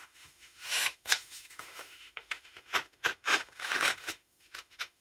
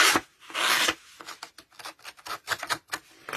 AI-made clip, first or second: first